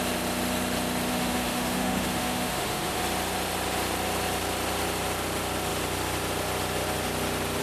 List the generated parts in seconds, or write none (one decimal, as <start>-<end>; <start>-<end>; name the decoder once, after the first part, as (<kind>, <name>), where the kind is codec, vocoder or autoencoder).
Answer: 1.1-3.0 (autoencoder, DAC-VAE)